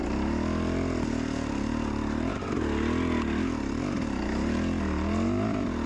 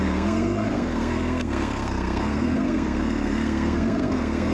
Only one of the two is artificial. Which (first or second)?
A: second